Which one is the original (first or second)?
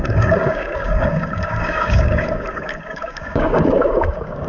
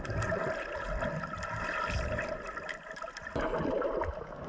second